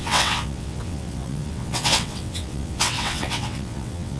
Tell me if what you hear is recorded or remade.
remade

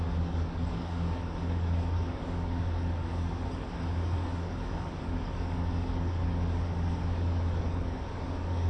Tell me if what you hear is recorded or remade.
remade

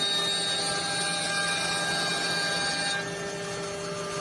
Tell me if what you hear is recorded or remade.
recorded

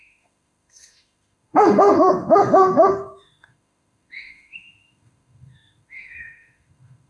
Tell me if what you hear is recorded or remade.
remade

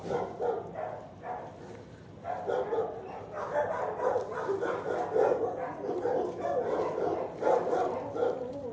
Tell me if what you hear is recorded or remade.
recorded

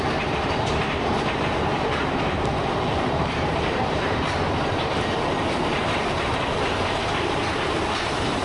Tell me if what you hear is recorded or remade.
remade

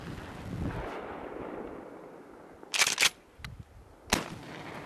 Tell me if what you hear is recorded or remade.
recorded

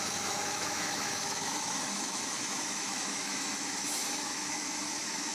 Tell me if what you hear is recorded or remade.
remade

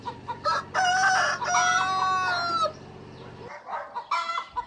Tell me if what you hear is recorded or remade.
recorded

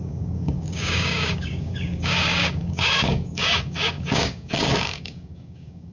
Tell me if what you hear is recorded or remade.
remade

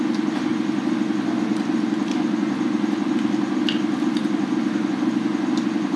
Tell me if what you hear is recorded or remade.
recorded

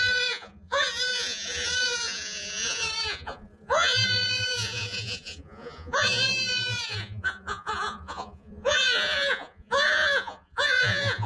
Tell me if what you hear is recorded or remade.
remade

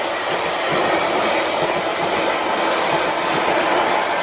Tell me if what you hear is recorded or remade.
recorded